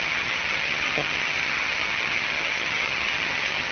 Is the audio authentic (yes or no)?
no